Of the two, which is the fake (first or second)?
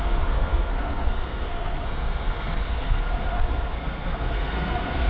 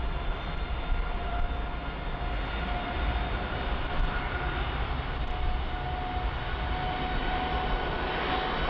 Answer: first